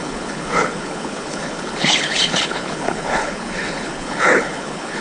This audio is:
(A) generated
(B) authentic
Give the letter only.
A